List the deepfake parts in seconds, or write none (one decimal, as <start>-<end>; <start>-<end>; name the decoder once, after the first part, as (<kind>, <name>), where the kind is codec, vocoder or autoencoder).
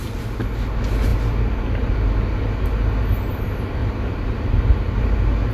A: 3.8-4.4 (vocoder, BigVGAN v2)